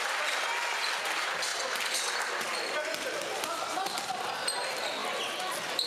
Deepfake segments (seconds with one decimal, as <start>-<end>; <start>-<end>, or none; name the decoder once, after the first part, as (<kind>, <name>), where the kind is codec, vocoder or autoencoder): none